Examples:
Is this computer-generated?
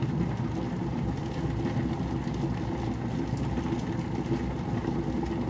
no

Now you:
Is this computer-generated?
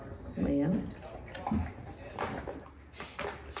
no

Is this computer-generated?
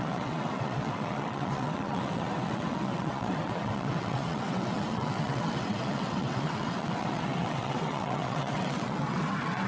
yes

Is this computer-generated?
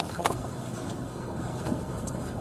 yes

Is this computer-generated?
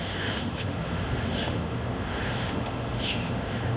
yes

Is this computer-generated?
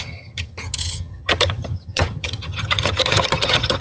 yes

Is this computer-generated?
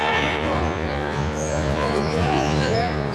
yes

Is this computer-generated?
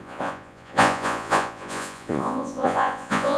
yes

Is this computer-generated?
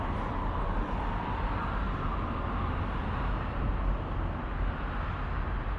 no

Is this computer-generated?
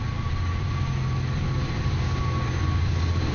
yes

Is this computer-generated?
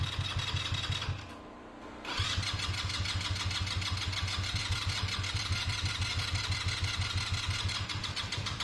no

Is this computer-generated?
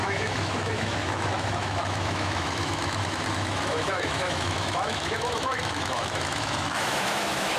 yes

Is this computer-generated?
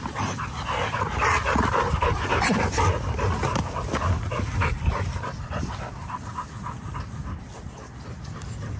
no